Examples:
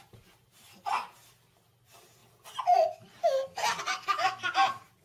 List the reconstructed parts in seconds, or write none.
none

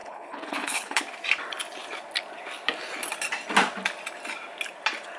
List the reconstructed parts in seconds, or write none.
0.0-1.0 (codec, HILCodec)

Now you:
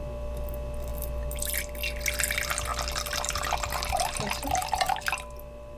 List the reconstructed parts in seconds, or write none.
none